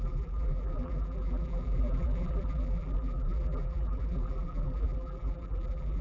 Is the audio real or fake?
fake